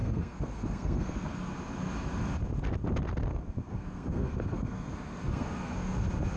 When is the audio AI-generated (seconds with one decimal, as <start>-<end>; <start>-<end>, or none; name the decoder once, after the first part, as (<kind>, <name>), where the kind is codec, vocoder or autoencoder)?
0.0-1.5 (codec, SNAC); 3.3-6.0